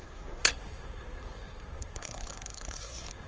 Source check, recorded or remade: remade